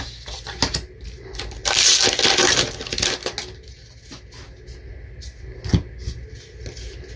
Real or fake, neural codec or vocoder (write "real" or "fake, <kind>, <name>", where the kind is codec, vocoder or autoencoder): real